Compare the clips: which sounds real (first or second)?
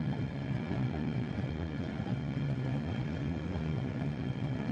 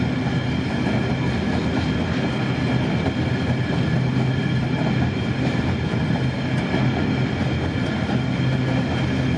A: second